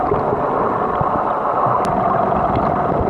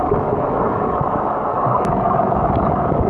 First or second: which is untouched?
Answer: first